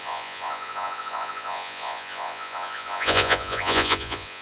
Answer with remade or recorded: remade